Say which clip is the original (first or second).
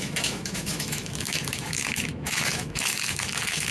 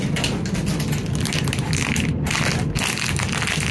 second